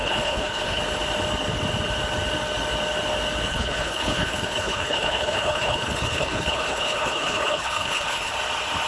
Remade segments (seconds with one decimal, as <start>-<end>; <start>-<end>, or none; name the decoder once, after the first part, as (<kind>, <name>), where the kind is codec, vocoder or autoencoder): 0.0-0.8 (codec, HILCodec); 3.5-8.3